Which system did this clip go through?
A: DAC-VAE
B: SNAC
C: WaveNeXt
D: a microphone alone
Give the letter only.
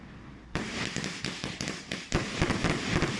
D